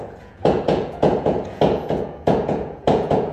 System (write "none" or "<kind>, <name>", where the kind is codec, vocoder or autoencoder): vocoder, Vocos